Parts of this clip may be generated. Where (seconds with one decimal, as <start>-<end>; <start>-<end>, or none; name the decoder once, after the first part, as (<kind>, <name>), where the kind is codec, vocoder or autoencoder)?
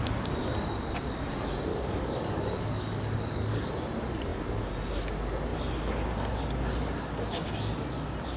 1.7-3.7 (codec, DAC)